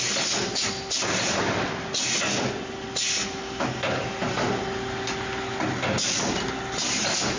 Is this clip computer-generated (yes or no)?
no